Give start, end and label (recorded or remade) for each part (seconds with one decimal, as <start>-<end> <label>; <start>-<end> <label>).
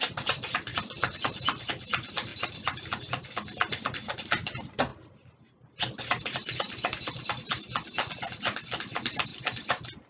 0.0-4.9 recorded; 4.9-7.3 remade; 7.3-9.3 recorded; 9.3-10.1 remade